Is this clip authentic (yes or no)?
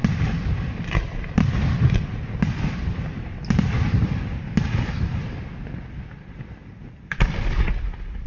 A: yes